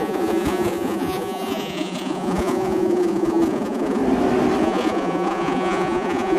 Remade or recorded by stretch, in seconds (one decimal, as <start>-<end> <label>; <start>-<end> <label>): 0.0-4.0 remade; 4.0-4.6 recorded; 4.6-6.4 remade